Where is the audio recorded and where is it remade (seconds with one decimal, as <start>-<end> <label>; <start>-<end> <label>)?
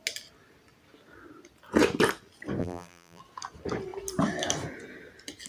0.0-2.6 recorded; 2.6-3.2 remade; 3.2-5.5 recorded